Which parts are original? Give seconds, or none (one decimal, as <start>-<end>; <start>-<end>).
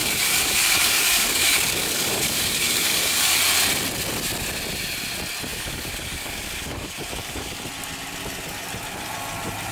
3.4-5.5; 7.6-9.7